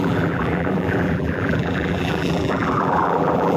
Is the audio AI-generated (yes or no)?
yes